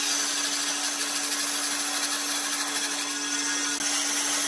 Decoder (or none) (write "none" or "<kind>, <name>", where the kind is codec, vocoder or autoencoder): none